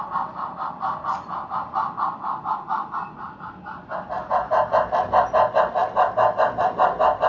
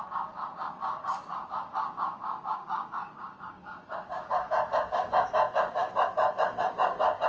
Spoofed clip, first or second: second